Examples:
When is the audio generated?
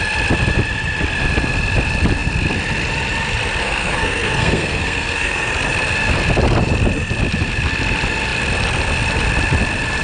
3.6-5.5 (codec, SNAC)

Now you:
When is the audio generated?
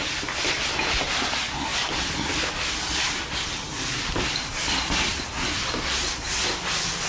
1.7-5.2 (vocoder, BigVGAN v2)